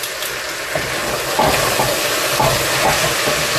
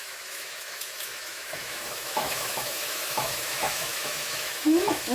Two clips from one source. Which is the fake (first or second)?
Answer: second